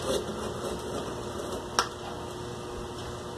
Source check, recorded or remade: recorded